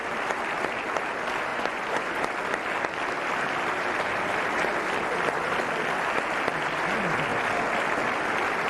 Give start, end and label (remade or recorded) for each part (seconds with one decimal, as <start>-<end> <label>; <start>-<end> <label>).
0.0-1.5 recorded; 1.5-2.1 remade; 2.1-8.7 recorded